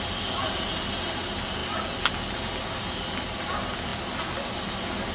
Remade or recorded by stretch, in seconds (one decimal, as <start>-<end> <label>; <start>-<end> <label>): 0.0-5.1 recorded